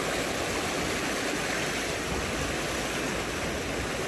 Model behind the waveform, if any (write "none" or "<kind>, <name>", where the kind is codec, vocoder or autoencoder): none